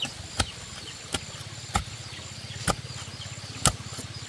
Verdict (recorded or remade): recorded